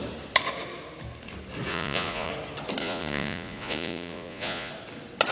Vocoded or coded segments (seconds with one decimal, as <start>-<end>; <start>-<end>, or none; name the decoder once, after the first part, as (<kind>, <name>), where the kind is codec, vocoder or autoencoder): 1.7-2.3 (vocoder, Vocos); 2.8-4.7